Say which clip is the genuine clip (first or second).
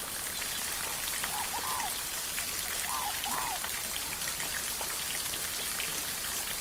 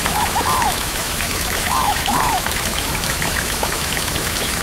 first